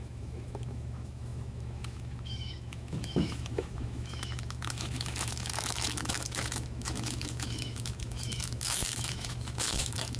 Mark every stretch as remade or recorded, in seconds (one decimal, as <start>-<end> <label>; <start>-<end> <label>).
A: 0.0-10.2 remade